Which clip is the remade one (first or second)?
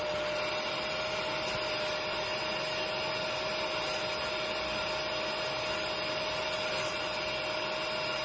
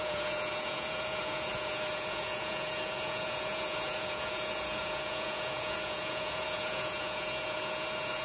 second